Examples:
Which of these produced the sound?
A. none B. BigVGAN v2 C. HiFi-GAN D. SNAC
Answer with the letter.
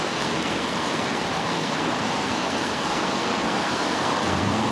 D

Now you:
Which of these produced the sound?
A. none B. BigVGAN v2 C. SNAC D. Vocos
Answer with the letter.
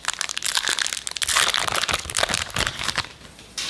A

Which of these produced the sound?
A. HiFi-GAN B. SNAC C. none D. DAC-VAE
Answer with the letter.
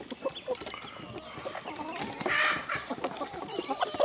C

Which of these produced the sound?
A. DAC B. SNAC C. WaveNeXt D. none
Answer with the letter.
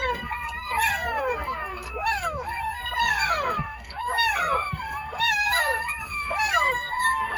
B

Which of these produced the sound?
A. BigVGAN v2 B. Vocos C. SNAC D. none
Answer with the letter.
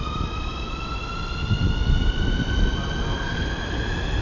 D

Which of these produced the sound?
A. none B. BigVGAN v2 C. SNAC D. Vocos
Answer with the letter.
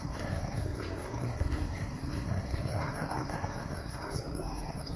C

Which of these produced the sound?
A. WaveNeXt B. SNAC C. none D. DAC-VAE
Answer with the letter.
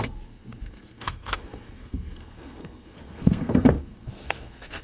B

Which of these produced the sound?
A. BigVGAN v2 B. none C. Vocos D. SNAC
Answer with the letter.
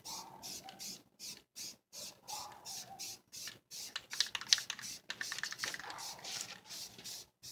B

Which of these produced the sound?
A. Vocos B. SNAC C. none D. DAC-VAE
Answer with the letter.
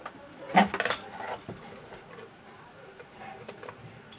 C